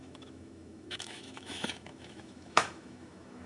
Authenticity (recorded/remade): remade